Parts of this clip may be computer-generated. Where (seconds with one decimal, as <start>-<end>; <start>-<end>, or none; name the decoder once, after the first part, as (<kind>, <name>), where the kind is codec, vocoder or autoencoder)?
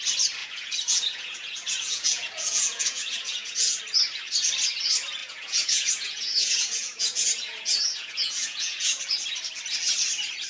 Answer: 0.4-3.8 (vocoder, Vocos); 5.2-9.0